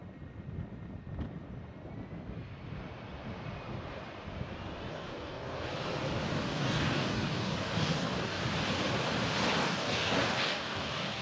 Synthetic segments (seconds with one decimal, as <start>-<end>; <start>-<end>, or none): 4.9-5.7; 6.4-8.4; 9.6-11.2